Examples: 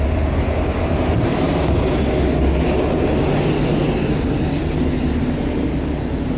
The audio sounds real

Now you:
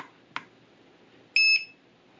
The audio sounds real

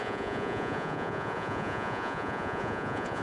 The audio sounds fake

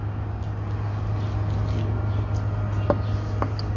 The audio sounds real